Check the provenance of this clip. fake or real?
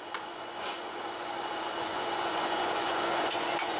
fake